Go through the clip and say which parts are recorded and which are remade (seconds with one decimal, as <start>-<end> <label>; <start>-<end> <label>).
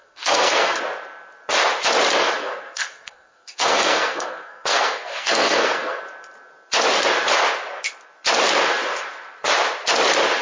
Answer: 0.0-0.8 remade; 0.8-2.4 recorded; 2.4-6.0 remade; 6.0-10.4 recorded